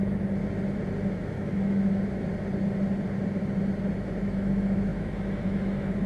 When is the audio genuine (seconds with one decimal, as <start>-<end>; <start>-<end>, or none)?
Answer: 0.4-1.1; 2.3-3.9